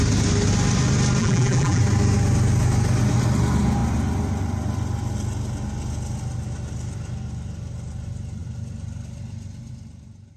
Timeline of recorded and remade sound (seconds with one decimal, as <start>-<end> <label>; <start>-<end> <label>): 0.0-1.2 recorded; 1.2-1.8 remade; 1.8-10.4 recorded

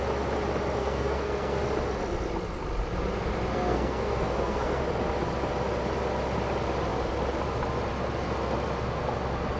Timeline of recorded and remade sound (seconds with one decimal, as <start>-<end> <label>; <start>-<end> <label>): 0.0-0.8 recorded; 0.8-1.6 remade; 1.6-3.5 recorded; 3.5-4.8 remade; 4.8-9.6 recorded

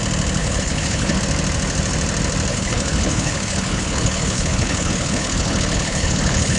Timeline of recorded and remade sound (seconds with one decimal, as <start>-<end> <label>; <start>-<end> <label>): 0.0-0.4 recorded; 0.4-1.2 remade; 1.2-2.5 recorded; 2.5-6.6 remade

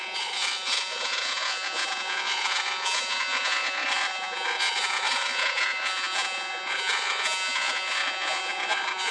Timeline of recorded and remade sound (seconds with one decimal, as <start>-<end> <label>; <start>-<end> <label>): 0.0-9.1 remade

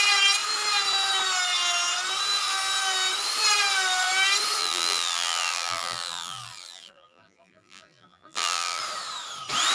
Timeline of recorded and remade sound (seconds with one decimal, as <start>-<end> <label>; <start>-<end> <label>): 0.0-4.6 recorded; 4.6-8.8 remade; 8.8-9.7 recorded

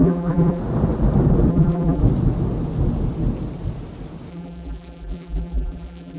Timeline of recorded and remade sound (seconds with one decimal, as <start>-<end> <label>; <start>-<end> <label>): 0.0-0.6 remade; 0.6-1.5 recorded; 1.5-2.0 remade; 2.0-4.3 recorded; 4.3-6.2 remade

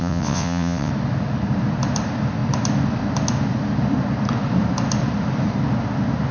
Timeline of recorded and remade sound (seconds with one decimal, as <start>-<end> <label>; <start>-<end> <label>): 0.0-0.9 remade; 0.9-6.3 recorded